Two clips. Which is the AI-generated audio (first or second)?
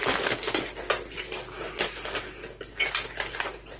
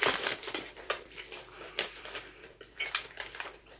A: second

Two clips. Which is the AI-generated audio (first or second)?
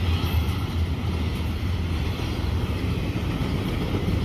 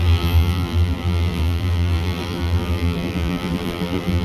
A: second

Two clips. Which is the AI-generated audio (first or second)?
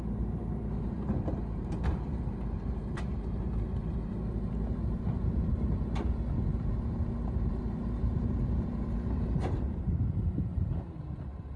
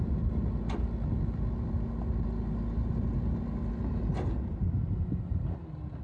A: first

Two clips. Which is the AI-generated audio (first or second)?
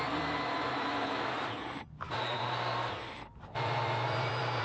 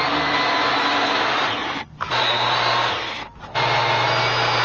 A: first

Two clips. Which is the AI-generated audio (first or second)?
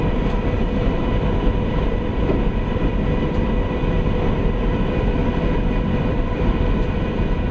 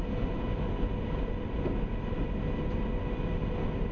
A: first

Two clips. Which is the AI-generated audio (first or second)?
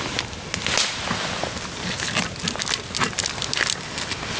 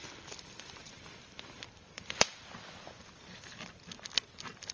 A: second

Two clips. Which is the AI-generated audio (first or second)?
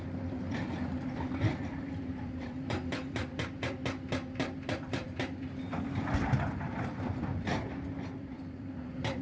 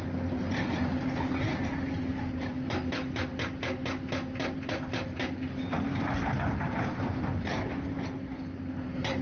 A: first